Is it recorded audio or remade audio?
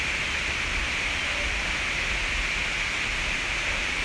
recorded